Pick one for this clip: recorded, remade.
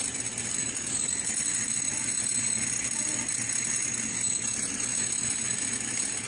recorded